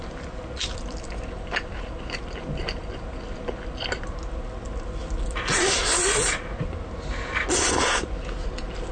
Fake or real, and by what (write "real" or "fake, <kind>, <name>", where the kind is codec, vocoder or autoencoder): real